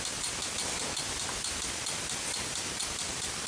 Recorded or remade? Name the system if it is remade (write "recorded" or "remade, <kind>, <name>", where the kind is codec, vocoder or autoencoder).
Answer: remade, vocoder, BigVGAN v2